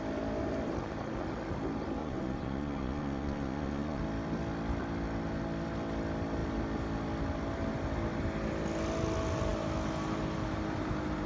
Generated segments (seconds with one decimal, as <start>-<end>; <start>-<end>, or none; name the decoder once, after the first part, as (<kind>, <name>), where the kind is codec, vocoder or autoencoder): 2.0-4.0 (vocoder, Vocos)